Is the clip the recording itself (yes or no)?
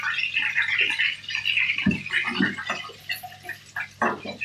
yes